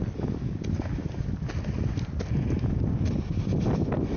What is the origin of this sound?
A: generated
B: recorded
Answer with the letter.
B